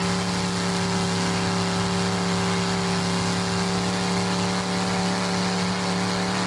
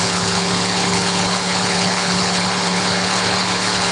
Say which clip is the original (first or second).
first